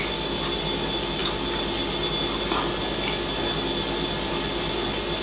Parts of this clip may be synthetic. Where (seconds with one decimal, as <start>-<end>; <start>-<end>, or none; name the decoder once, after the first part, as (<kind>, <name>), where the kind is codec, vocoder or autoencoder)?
none